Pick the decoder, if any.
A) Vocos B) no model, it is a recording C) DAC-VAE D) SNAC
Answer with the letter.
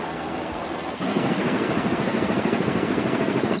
D